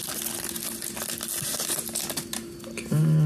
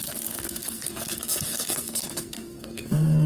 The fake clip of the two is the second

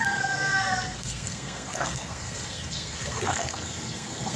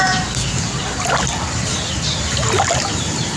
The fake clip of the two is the first